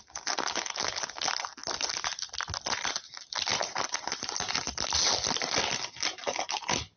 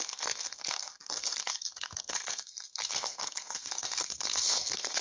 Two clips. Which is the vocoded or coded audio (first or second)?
second